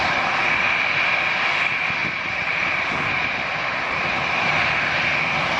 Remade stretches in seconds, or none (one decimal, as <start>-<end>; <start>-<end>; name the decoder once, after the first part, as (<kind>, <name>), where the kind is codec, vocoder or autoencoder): 2.0-4.9 (vocoder, BigVGAN v2)

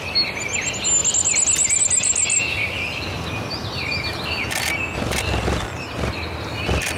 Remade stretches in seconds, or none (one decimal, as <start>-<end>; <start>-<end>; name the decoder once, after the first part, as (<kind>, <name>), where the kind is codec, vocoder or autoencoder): none

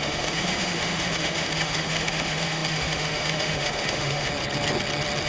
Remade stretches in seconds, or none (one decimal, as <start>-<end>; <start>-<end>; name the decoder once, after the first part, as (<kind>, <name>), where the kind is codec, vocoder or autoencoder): 0.0-4.3 (autoencoder, DAC-VAE)

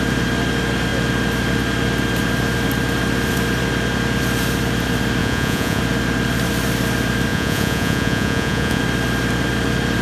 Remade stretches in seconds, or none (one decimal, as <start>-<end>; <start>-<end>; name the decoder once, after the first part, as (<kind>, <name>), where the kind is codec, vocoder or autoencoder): 5.2-5.8 (vocoder, Vocos); 7.3-8.8

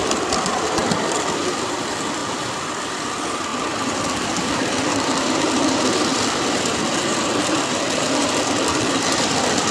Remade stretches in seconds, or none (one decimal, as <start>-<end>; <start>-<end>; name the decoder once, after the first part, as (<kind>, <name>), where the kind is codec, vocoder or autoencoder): 0.0-0.8 (vocoder, BigVGAN v2); 1.5-9.7

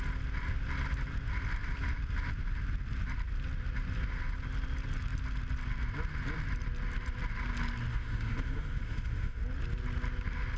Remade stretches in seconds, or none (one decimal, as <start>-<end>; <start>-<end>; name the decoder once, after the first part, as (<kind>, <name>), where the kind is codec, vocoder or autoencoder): 7.9-9.4 (autoencoder, DAC-VAE)

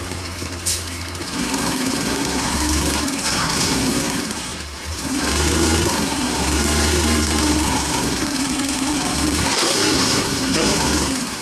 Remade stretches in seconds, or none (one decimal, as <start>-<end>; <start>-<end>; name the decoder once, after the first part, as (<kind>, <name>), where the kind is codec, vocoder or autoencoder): 0.0-11.4 (codec, SNAC)